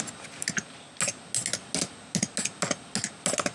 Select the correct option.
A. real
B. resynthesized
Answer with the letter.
A